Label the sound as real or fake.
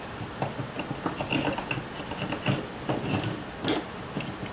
real